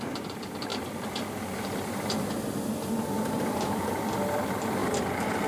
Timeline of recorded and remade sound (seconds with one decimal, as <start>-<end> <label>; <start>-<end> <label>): 0.0-5.5 remade